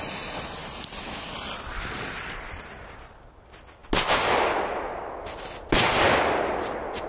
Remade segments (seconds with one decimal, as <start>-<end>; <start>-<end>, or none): none